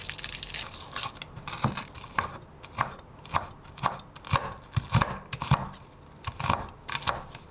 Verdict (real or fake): real